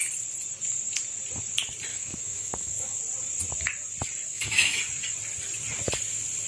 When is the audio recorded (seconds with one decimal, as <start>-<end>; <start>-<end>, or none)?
0.0-1.9; 3.0-4.3; 4.8-6.5